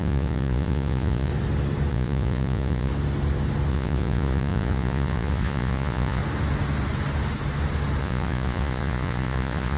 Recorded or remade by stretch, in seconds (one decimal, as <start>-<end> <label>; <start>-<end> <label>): 0.0-1.3 remade; 1.3-1.9 recorded; 1.9-2.9 remade; 2.9-3.7 recorded; 3.7-6.2 remade; 6.2-8.0 recorded; 8.0-9.8 remade